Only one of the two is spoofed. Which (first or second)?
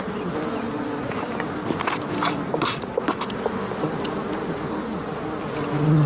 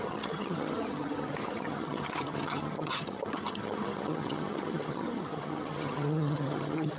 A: second